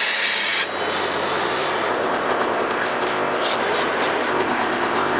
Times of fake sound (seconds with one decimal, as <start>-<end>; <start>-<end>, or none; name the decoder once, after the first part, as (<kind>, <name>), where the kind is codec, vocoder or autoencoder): 1.9-3.6 (codec, ZipCodec); 4.3-5.2